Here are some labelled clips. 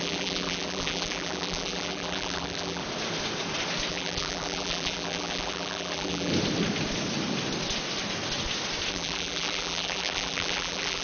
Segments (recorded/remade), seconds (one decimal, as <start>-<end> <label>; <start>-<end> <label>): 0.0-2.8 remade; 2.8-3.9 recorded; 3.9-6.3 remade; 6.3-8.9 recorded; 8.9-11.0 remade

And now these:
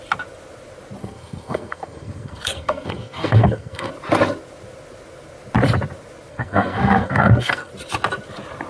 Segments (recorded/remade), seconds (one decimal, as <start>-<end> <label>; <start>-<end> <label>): 0.0-1.0 recorded; 1.0-3.9 remade; 3.9-6.3 recorded; 6.3-7.7 remade; 7.7-8.7 recorded

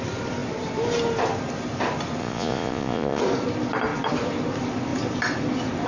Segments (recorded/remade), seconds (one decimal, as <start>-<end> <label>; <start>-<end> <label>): 0.0-2.2 recorded; 2.2-3.2 remade; 3.2-5.9 recorded